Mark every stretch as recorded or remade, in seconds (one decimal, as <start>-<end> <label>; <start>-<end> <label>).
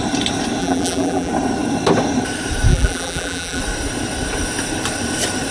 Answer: 0.0-0.6 recorded; 0.6-1.3 remade; 1.3-2.7 recorded; 2.7-3.6 remade; 3.6-5.5 recorded